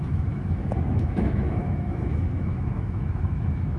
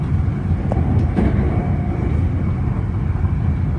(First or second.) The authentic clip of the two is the second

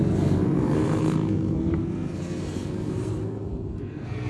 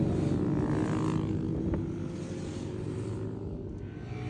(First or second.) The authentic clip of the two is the second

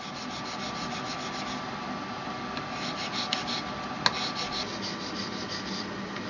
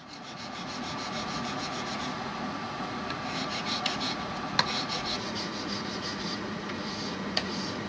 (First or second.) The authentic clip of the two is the first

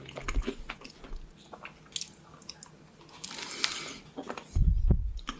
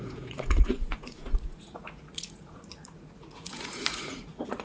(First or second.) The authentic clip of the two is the first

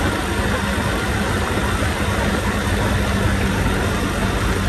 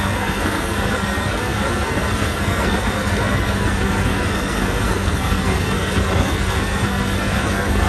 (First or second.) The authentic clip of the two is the first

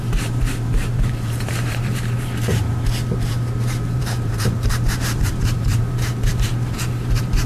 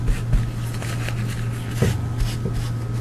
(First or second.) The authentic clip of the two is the second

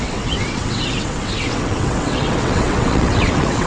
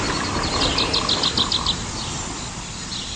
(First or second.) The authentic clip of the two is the second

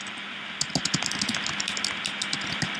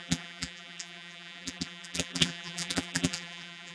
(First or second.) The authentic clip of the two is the first